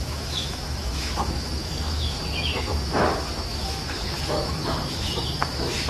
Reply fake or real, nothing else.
fake